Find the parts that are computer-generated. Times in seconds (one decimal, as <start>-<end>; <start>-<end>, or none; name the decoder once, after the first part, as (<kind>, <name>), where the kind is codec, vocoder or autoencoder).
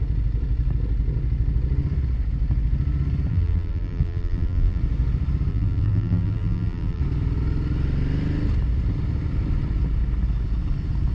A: 3.3-4.8 (vocoder, BigVGAN v2); 5.5-7.0